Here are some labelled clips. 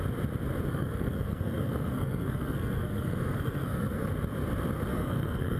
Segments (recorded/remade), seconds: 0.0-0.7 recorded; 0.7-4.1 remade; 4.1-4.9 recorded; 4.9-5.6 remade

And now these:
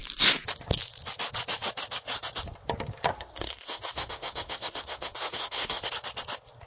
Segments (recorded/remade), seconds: 0.0-3.1 recorded; 3.1-5.9 remade; 5.9-6.7 recorded

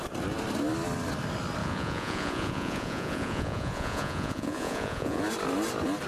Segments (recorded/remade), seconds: 0.0-1.6 recorded; 1.6-5.2 remade; 5.2-6.1 recorded

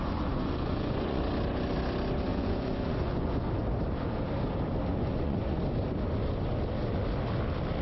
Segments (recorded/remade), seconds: 0.0-1.2 remade; 1.2-2.3 recorded; 2.3-3.5 remade; 3.5-4.9 recorded; 4.9-5.6 remade; 5.6-7.8 recorded

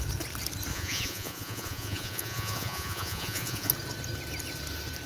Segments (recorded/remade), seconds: 0.0-0.7 recorded; 0.7-3.7 remade; 3.7-5.1 recorded